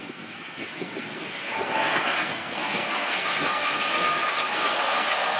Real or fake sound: fake